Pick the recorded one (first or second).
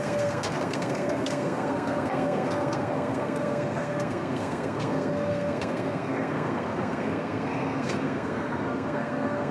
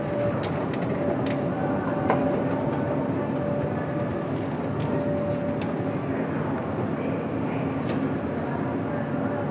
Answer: second